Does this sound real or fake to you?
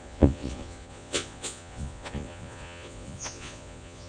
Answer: fake